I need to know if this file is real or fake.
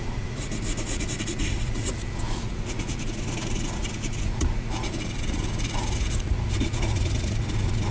fake